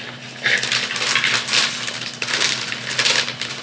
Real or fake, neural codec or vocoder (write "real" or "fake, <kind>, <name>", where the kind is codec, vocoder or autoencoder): real